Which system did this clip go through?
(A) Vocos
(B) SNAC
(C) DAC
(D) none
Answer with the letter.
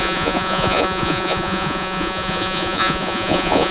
A